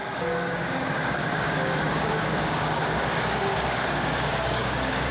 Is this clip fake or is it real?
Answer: fake